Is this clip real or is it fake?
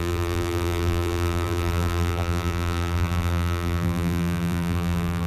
fake